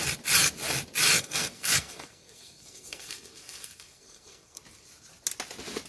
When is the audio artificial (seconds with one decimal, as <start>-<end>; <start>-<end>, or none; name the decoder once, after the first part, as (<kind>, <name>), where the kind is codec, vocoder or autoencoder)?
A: 1.1-4.6 (codec, SNAC)